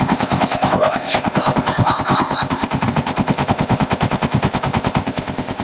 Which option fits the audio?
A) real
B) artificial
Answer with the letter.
B